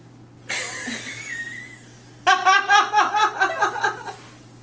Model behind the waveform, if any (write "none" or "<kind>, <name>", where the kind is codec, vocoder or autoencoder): none